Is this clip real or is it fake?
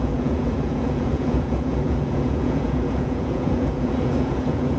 fake